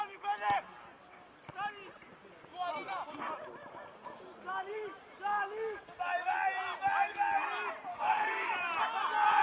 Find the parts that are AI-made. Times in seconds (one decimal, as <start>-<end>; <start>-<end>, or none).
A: 7.9-8.5